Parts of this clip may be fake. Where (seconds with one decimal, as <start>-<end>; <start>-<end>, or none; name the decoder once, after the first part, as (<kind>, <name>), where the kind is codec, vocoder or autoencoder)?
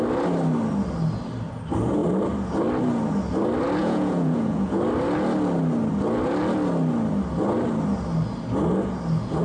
3.8-4.8 (vocoder, Vocos)